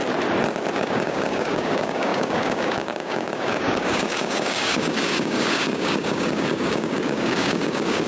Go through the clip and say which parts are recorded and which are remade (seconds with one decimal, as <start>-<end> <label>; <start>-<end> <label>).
0.0-0.7 recorded; 0.7-8.1 remade